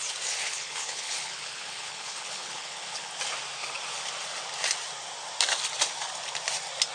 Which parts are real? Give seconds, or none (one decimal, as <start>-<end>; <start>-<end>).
0.0-0.4; 3.1-6.9

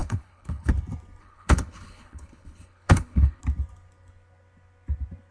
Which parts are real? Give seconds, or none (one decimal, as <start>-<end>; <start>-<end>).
0.7-1.2; 3.4-5.3

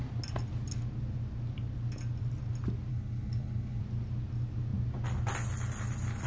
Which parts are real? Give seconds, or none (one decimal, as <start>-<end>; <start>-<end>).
0.0-2.9; 3.8-6.3

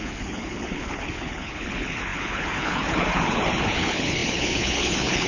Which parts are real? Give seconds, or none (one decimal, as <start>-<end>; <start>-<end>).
none

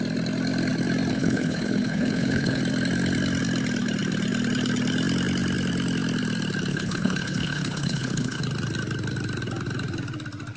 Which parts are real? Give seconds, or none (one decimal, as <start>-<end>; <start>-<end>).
0.0-1.1; 2.6-6.7; 8.4-10.6